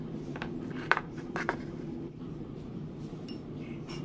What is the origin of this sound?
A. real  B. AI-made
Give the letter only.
B